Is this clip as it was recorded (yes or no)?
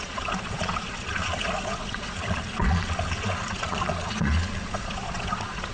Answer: no